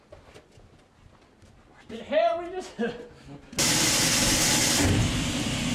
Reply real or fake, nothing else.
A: real